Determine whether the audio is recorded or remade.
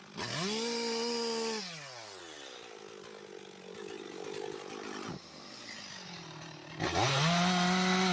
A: recorded